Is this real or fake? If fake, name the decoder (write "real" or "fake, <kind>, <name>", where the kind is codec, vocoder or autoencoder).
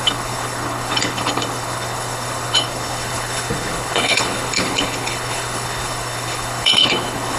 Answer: fake, codec, HILCodec